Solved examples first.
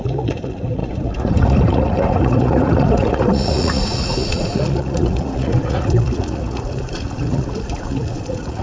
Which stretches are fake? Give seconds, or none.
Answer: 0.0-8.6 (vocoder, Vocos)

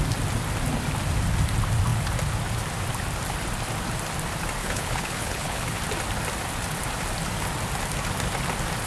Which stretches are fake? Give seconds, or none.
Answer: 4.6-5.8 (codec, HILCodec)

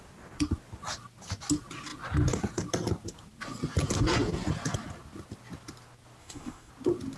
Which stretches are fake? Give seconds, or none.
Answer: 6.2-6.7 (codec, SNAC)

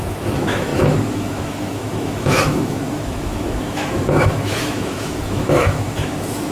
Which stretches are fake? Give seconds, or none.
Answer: 0.0-6.5 (autoencoder, DAC-VAE)

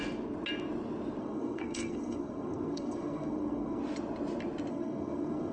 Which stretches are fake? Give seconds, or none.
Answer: 1.2-3.8 (codec, SNAC); 4.7-5.5

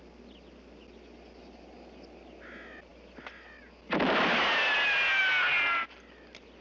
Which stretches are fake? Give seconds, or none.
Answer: none

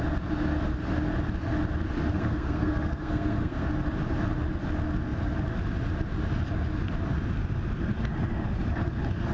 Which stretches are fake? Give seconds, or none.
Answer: 2.1-3.7 (codec, SNAC)